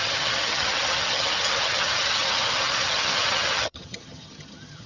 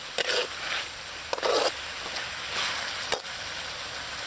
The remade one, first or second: first